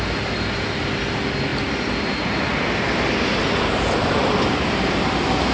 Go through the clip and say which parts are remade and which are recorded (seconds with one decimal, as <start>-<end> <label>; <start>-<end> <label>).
0.0-5.5 recorded